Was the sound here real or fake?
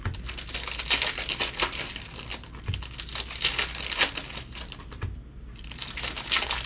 real